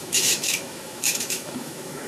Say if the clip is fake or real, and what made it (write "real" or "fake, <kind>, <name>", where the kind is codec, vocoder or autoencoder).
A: fake, autoencoder, DAC-VAE